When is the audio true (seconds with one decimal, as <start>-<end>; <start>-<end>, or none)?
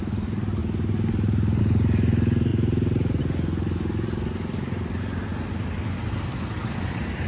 0.0-7.3